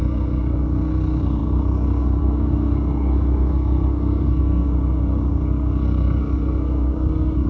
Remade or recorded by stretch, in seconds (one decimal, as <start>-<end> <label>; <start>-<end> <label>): 0.0-7.5 remade